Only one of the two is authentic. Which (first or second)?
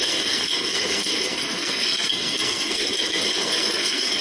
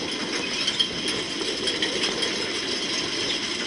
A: second